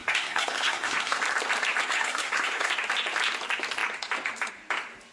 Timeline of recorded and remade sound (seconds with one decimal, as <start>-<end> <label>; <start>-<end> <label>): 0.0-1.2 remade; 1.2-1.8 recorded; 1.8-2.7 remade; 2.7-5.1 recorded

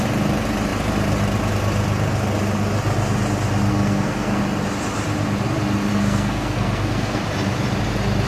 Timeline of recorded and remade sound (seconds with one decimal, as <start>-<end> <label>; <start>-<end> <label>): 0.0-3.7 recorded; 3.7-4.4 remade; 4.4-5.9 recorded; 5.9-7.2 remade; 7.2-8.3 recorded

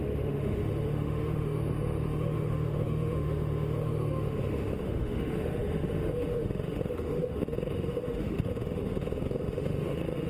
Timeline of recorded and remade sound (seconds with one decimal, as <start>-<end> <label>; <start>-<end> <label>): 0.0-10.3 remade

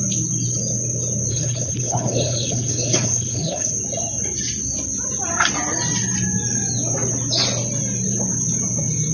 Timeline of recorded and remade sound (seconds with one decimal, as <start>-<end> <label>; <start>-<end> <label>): 0.0-1.3 recorded; 1.3-3.7 remade; 3.7-9.1 recorded

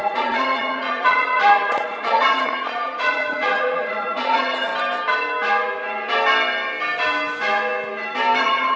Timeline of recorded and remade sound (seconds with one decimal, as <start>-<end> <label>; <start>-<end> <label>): 0.0-4.7 remade; 4.7-8.4 recorded; 8.4-8.8 remade

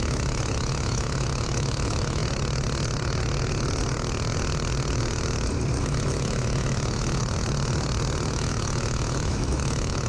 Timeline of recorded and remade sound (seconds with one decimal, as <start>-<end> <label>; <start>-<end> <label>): 0.0-2.2 remade; 2.2-5.8 recorded; 5.8-7.2 remade; 7.2-8.3 recorded; 8.3-10.1 remade

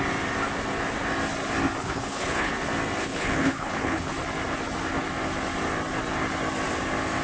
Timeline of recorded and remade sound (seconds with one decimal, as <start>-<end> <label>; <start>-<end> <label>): 0.0-1.8 recorded; 1.8-2.5 remade; 2.5-3.0 recorded; 3.0-4.1 remade; 4.1-7.2 recorded

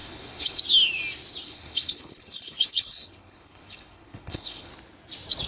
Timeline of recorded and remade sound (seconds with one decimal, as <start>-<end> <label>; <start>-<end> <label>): 0.0-0.6 remade; 0.6-1.4 recorded; 1.4-4.7 remade; 4.7-5.5 recorded